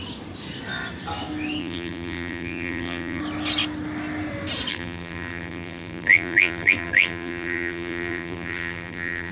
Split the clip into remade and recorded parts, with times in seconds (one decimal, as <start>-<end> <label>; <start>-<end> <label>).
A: 0.0-1.6 recorded; 1.6-3.2 remade; 3.2-4.7 recorded; 4.7-9.3 remade